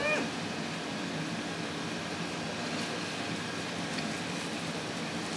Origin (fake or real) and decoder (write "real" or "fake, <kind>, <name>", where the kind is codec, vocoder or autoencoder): fake, vocoder, BigVGAN v2